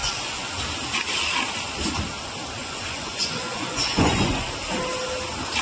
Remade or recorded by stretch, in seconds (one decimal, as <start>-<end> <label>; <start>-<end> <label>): 0.0-0.6 remade; 0.6-2.6 recorded; 2.6-4.5 remade; 4.5-5.6 recorded

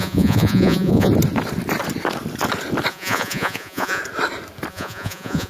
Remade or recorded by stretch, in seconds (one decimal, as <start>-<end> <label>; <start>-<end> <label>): 0.0-1.1 remade; 1.1-2.9 recorded; 2.9-4.0 remade; 4.0-4.7 recorded; 4.7-5.5 remade

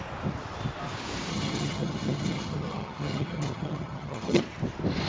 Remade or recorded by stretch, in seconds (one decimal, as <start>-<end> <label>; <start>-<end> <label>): 0.0-1.3 recorded; 1.3-4.4 remade; 4.4-5.1 recorded

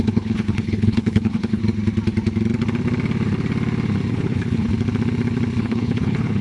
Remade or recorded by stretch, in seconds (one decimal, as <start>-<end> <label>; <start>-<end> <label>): 0.0-1.6 remade; 1.6-4.1 recorded; 4.1-4.7 remade; 4.7-5.6 recorded; 5.6-6.4 remade

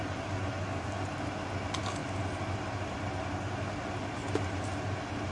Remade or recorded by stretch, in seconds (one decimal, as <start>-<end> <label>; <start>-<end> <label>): 0.0-5.3 recorded

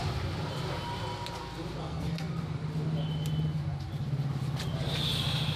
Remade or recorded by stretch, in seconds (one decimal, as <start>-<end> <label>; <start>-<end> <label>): 0.0-1.8 recorded; 1.8-2.4 remade; 2.4-5.6 recorded

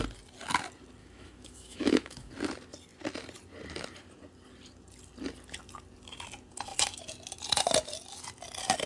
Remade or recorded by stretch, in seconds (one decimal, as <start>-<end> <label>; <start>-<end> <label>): 0.0-1.0 recorded; 1.0-2.3 remade; 2.3-8.9 recorded